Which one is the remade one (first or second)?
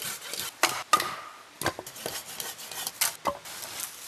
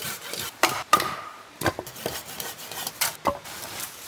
second